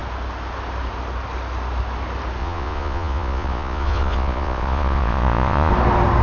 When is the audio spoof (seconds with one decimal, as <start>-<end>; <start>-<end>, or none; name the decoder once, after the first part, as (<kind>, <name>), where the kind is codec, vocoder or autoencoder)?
2.4-5.7 (vocoder, Vocos)